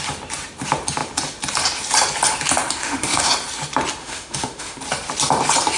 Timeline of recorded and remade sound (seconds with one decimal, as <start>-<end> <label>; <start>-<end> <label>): 0.0-2.8 recorded; 2.8-3.3 remade; 3.3-4.0 recorded; 4.0-4.8 remade; 4.8-5.8 recorded